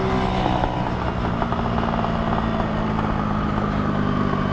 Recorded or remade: recorded